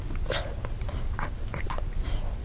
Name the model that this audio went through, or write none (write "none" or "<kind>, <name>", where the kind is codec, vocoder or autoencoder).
none